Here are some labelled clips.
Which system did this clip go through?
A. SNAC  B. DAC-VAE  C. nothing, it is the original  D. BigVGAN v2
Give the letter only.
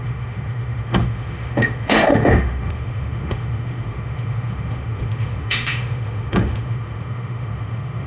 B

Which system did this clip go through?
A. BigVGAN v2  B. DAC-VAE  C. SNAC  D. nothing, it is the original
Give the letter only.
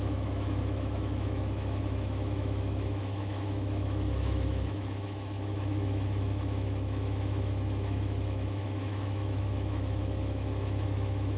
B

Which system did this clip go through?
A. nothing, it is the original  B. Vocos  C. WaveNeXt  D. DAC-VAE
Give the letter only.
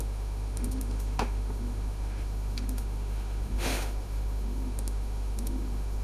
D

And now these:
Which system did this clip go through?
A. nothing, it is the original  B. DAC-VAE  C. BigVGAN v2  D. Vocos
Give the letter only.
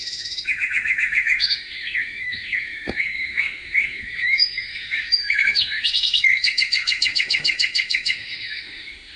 B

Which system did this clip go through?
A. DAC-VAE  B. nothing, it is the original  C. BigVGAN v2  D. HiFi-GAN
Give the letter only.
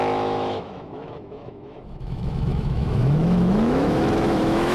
A